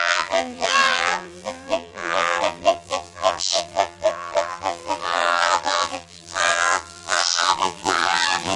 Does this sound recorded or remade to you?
remade